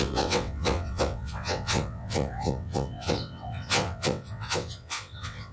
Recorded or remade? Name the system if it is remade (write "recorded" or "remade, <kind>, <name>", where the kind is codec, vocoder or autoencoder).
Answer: remade, vocoder, WaveNeXt